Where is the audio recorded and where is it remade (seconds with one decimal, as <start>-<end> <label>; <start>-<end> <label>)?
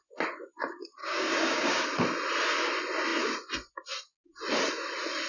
0.0-1.0 recorded; 1.0-1.8 remade; 1.8-5.3 recorded